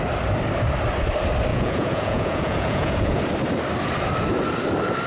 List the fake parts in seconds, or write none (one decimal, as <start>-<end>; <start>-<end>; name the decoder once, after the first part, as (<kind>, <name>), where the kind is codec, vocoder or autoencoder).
1.5-3.2 (vocoder, Vocos)